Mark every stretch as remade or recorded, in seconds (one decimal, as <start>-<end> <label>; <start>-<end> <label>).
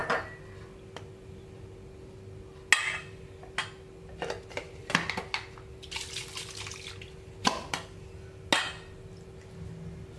0.0-10.2 recorded